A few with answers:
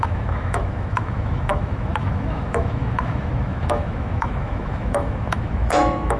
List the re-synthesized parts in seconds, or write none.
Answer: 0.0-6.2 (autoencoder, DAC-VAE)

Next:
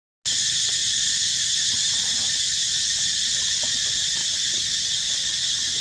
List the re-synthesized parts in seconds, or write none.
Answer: none

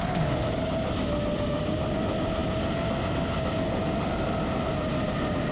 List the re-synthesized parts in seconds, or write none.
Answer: none

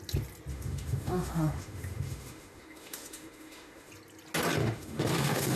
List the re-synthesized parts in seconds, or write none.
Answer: 0.5-3.9 (autoencoder, DAC-VAE); 4.6-5.6

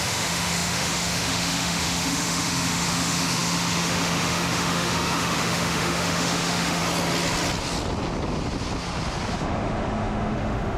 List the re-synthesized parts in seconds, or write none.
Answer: 0.0-6.8 (autoencoder, DAC-VAE); 9.3-10.8

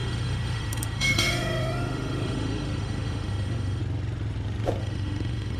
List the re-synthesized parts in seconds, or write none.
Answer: 0.0-3.8 (autoencoder, DAC-VAE); 4.8-5.6